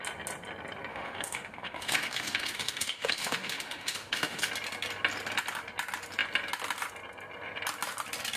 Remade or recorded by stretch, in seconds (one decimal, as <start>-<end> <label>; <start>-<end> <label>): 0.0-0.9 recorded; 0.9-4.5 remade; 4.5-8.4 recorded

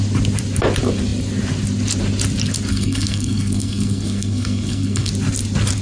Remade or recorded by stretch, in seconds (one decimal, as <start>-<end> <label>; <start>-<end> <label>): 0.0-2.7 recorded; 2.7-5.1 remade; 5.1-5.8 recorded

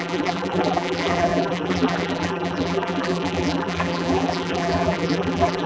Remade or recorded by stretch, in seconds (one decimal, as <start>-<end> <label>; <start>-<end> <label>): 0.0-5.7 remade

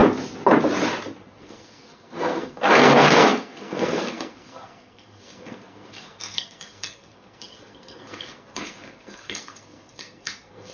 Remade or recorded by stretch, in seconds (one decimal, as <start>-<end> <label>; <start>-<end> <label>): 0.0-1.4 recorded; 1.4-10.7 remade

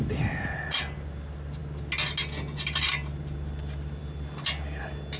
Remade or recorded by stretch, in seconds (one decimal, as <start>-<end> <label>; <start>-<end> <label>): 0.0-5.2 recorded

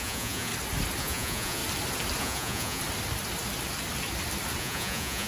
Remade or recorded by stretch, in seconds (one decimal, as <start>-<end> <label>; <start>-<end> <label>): 0.0-0.5 remade; 0.5-1.0 recorded; 1.0-1.6 remade; 1.6-2.2 recorded; 2.2-2.8 remade; 2.8-4.6 recorded; 4.6-5.3 remade